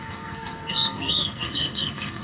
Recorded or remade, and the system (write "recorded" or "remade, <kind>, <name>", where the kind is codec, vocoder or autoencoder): remade, codec, SNAC